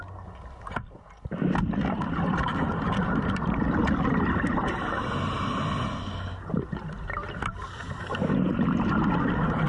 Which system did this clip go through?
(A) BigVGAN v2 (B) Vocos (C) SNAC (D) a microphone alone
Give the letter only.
D